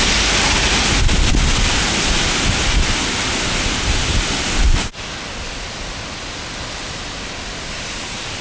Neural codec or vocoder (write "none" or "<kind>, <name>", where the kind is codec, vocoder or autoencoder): none